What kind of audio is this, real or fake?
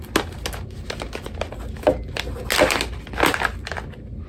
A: real